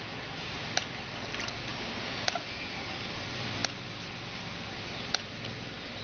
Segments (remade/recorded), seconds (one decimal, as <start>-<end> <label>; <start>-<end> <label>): 0.0-1.7 recorded; 1.7-2.3 remade; 2.3-6.0 recorded